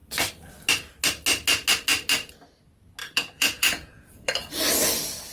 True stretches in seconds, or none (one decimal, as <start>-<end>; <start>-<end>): 0.0-3.0; 4.3-5.3